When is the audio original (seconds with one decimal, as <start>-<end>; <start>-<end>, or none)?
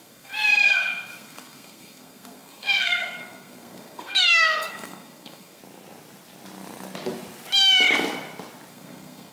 5.6-8.7